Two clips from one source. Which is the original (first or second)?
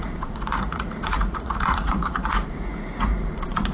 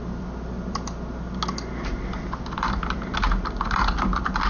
second